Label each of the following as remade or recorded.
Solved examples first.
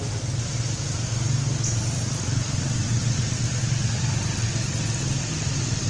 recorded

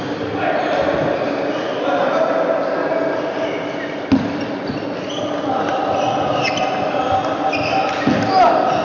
recorded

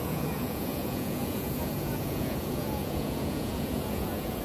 remade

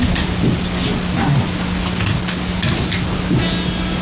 recorded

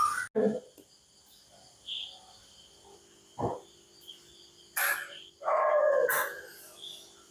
recorded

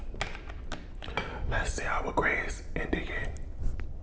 recorded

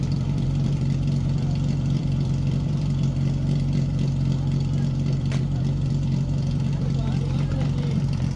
remade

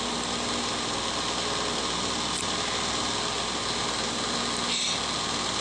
recorded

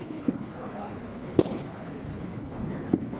remade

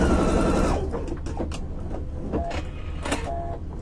recorded